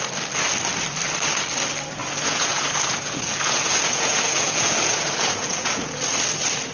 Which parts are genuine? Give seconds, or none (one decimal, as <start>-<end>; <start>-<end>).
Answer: 0.0-2.0; 6.0-6.7